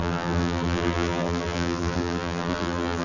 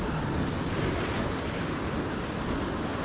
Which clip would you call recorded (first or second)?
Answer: second